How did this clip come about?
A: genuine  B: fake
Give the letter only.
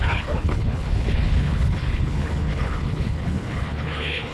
B